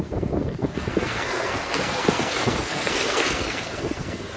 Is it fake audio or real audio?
fake